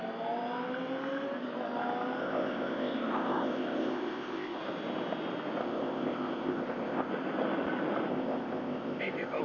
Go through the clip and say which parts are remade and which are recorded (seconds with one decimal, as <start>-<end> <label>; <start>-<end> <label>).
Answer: 0.0-2.2 recorded; 2.2-4.6 remade; 4.6-5.6 recorded; 5.6-7.1 remade; 7.1-8.1 recorded; 8.1-9.4 remade